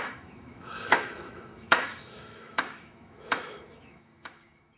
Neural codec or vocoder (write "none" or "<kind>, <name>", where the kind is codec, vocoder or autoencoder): autoencoder, DAC-VAE